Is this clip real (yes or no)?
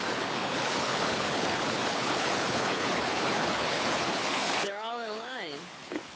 no